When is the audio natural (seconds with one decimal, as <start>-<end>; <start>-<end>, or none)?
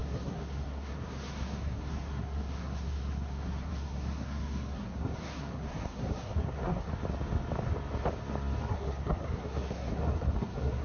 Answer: 6.9-8.6